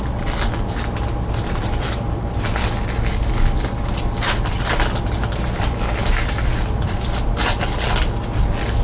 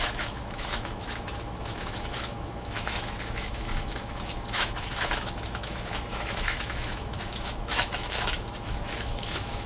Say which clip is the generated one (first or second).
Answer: second